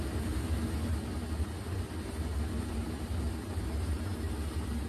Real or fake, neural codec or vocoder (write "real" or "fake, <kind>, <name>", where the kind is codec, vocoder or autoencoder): fake, vocoder, BigVGAN v2